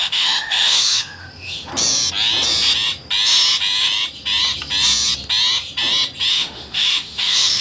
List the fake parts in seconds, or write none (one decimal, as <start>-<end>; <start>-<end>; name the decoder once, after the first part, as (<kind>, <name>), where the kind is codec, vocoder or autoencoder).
0.0-1.7 (autoencoder, DAC-VAE); 6.3-7.6